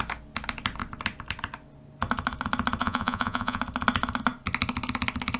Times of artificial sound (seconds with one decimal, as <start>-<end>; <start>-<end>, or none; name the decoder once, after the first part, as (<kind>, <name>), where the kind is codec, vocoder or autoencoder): 2.8-3.6 (vocoder, Vocos)